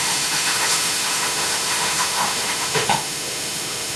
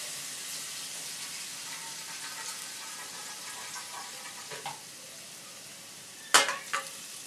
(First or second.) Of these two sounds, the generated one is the first